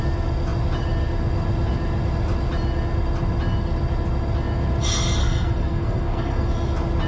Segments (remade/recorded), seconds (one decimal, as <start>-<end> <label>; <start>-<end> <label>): 0.0-5.2 recorded; 5.2-6.5 remade; 6.5-7.1 recorded